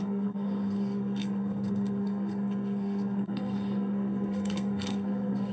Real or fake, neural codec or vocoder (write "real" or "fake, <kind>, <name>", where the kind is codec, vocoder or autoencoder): fake, codec, SNAC